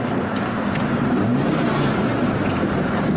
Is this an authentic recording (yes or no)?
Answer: yes